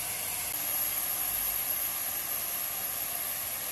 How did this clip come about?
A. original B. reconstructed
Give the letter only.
A